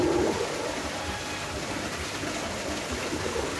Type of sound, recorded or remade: recorded